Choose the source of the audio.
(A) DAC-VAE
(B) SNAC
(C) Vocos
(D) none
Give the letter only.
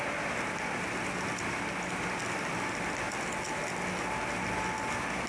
D